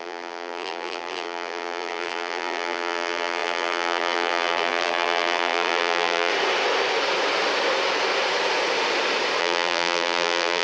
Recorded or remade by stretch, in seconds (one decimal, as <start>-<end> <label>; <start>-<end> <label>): 0.0-6.3 remade; 6.3-9.4 recorded; 9.4-10.6 remade